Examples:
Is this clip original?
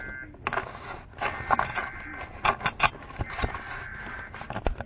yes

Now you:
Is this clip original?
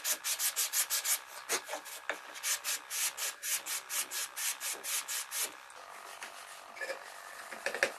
yes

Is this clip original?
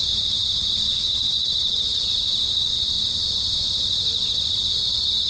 yes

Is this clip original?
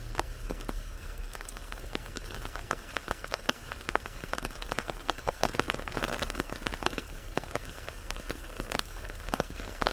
no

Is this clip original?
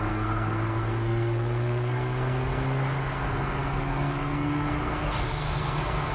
no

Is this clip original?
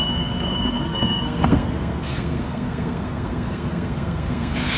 no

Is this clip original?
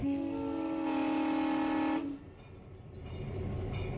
yes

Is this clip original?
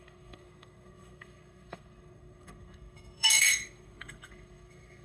no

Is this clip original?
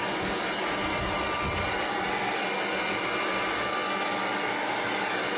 yes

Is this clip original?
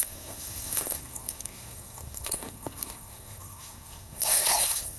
no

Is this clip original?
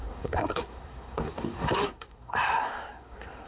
no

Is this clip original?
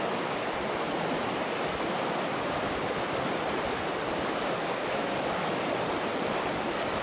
yes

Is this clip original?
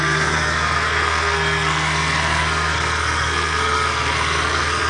no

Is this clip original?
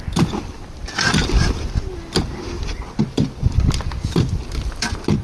yes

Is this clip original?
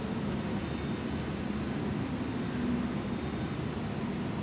yes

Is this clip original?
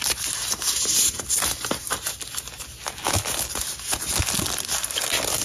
yes